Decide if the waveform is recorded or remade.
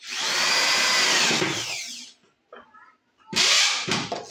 recorded